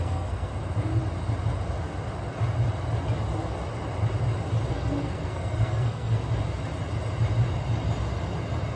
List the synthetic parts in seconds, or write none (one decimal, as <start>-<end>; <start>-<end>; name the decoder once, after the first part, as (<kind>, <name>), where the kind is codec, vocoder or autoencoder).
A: 0.0-0.5 (codec, SNAC); 4.7-6.2